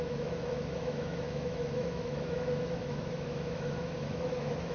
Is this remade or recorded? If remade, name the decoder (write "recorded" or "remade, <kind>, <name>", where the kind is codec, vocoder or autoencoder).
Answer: remade, autoencoder, DAC-VAE